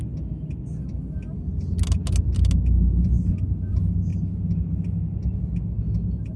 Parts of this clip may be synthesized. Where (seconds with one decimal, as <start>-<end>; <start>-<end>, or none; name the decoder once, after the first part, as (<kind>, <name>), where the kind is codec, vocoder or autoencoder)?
none